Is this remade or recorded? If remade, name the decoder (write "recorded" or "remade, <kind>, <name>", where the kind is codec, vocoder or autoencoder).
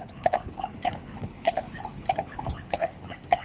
remade, codec, HILCodec